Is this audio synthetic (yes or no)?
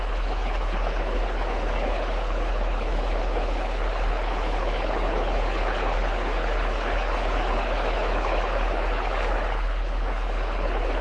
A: yes